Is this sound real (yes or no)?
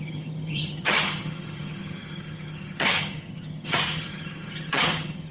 no